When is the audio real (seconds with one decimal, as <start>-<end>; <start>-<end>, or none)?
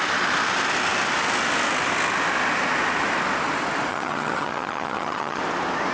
0.0-3.9; 5.4-5.9